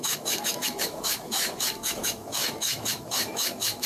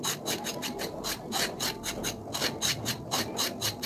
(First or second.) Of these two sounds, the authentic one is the second